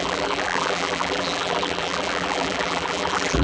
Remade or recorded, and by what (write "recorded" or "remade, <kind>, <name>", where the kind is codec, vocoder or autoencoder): remade, vocoder, BigVGAN v2